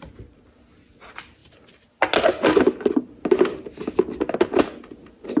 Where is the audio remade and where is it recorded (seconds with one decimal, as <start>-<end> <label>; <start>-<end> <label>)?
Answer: 0.0-5.4 recorded